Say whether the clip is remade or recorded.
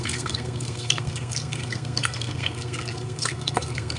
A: remade